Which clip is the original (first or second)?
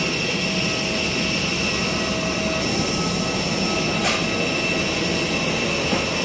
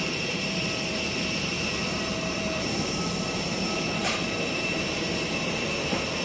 first